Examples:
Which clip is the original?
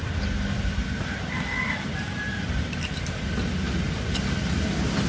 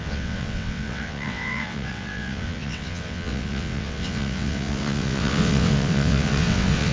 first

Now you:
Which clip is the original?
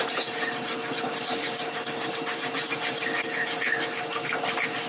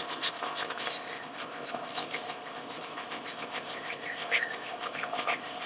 first